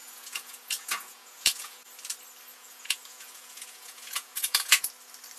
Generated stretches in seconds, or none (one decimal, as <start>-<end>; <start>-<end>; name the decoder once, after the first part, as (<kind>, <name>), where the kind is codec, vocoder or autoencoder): 0.0-1.9 (vocoder, Vocos); 2.5-4.9